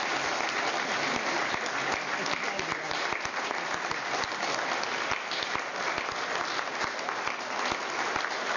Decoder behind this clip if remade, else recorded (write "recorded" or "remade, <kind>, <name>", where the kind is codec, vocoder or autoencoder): recorded